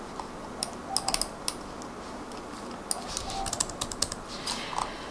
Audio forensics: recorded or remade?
recorded